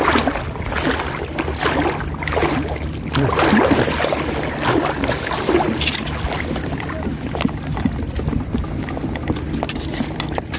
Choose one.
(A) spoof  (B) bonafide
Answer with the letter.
B